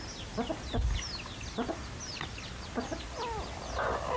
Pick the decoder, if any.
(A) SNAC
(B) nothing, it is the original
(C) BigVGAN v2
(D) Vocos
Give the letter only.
B